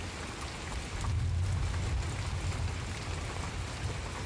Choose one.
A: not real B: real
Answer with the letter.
B